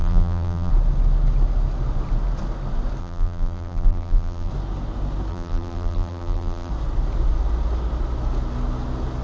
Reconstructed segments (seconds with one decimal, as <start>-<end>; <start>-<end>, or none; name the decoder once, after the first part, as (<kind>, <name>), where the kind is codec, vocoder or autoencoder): 0.0-0.7 (vocoder, BigVGAN v2); 3.0-4.5; 5.3-6.7

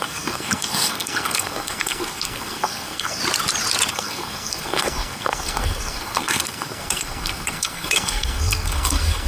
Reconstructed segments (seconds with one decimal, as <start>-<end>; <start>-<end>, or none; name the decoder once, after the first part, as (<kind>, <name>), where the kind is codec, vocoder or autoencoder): 0.0-3.2 (codec, SNAC); 3.9-9.3